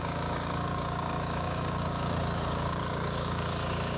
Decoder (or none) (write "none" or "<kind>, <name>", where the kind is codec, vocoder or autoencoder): codec, DAC